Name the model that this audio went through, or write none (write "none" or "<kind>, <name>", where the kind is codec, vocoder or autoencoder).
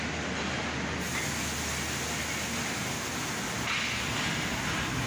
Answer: none